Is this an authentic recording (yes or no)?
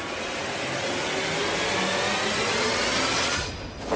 yes